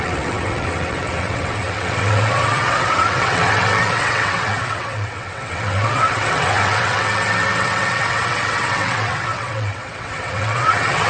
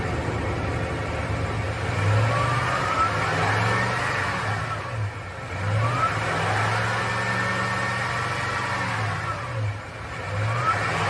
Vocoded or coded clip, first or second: first